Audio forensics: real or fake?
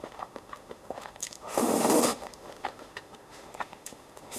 fake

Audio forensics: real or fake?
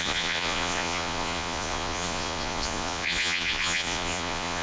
fake